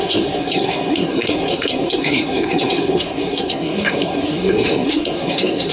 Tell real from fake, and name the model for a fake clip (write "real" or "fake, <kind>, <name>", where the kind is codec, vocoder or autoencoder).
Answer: fake, codec, SNAC